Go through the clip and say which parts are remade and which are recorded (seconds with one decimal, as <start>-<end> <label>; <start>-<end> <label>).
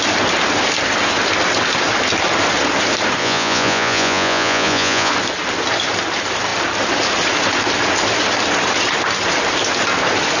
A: 0.0-3.2 recorded; 3.2-5.1 remade; 5.1-10.4 recorded